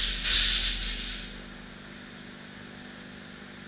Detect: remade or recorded recorded